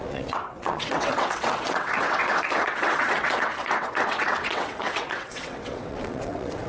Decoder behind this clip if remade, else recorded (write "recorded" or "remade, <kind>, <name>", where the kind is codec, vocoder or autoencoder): remade, vocoder, WaveNeXt